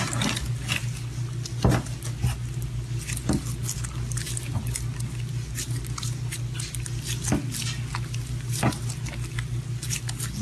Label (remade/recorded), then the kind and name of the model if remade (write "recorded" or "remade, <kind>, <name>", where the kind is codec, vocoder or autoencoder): recorded